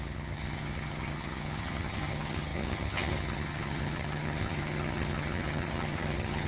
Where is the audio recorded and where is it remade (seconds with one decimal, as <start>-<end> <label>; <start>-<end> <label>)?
0.0-6.5 remade